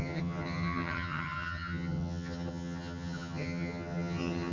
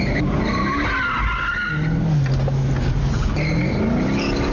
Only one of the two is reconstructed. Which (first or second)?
first